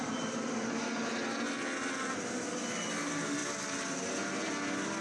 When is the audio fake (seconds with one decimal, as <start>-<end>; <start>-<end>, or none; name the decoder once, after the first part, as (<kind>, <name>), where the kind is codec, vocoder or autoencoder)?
none